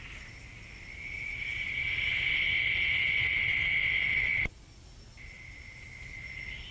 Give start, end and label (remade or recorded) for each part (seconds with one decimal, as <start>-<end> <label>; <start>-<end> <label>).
0.0-6.7 recorded